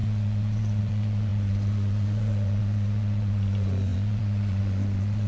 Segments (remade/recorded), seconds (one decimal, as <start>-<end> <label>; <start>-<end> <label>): 0.0-5.3 remade